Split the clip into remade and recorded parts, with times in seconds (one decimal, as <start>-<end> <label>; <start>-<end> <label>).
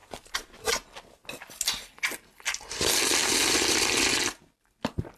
0.0-0.7 remade; 0.7-5.2 recorded